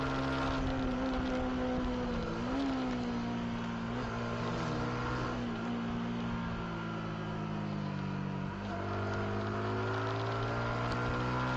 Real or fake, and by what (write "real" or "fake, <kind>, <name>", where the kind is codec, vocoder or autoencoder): real